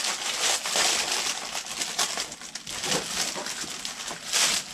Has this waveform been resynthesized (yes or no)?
no